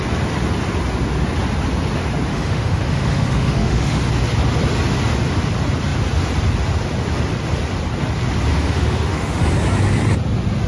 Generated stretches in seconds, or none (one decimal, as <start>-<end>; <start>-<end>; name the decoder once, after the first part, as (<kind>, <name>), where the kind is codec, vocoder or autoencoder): 2.3-4.1 (autoencoder, DAC-VAE); 8.5-9.4